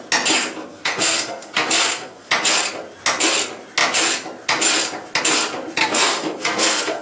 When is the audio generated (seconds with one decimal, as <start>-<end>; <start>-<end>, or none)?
0.6-2.3; 5.8-7.0